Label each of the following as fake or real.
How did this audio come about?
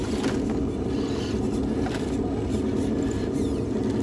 real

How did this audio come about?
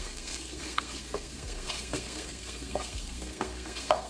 fake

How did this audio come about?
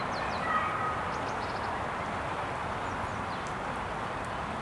real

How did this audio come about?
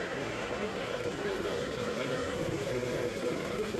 fake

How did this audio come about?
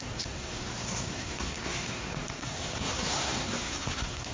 fake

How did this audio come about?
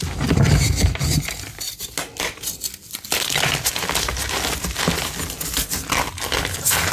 real